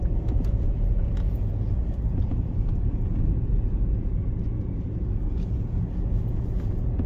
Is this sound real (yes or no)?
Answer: no